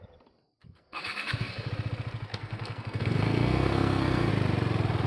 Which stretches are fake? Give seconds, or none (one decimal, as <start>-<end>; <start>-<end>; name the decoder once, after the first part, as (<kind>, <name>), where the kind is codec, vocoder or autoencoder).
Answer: 0.6-1.7 (codec, SNAC); 2.3-4.3